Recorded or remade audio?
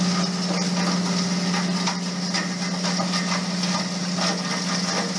recorded